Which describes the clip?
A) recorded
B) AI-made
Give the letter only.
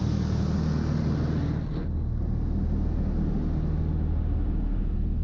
A